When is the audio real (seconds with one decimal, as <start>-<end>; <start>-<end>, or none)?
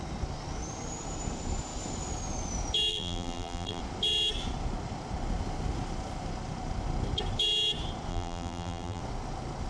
0.0-2.9; 3.8-8.1; 9.0-9.7